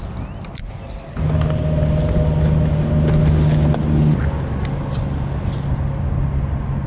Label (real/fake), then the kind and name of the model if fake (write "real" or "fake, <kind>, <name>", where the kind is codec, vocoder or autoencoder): real